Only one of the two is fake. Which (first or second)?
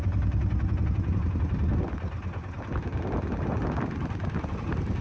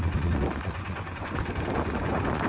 second